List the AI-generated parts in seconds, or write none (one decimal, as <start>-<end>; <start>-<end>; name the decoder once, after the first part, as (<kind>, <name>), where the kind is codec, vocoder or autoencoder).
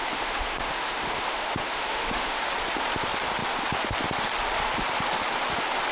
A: 0.0-2.4 (autoencoder, DAC-VAE)